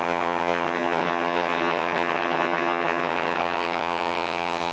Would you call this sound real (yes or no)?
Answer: no